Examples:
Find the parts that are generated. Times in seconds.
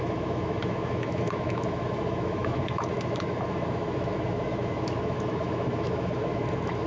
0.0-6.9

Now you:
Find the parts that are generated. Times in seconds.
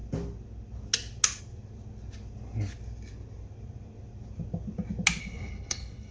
5.2-6.1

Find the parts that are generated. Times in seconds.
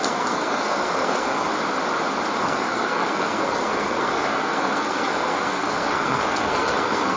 0.0-1.5; 2.4-7.2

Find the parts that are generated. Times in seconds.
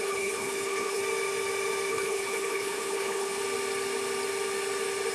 0.0-1.0; 1.9-3.4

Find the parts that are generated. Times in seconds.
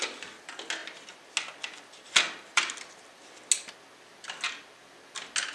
none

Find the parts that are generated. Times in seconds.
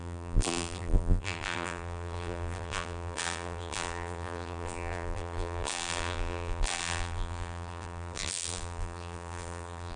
0.0-10.0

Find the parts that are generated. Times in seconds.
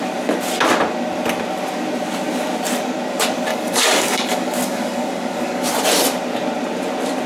3.5-5.7